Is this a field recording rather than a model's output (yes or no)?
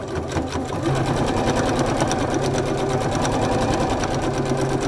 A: yes